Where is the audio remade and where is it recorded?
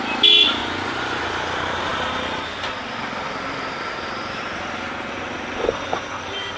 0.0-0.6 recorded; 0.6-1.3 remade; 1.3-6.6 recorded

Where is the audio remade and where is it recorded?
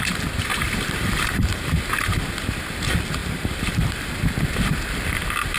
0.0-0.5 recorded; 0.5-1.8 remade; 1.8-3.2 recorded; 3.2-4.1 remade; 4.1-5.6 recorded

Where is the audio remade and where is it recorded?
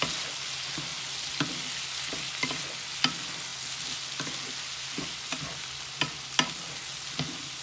0.0-7.6 recorded